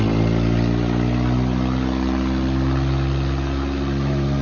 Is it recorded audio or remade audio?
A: recorded